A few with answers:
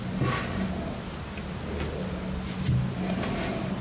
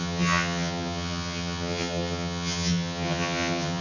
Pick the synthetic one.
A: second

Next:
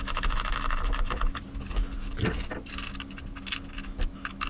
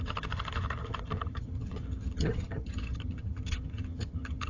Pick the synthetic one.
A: second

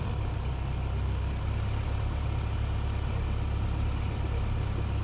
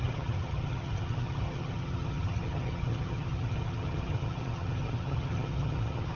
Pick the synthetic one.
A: second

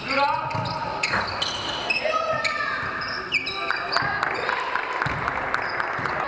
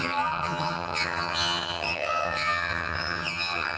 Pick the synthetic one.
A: second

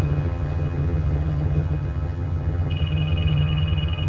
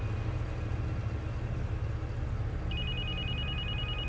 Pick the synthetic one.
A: first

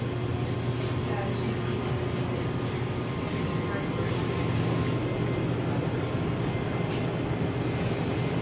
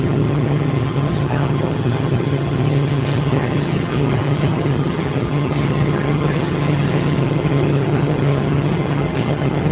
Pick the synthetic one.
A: second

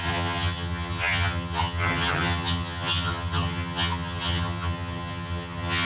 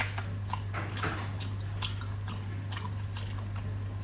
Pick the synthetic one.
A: first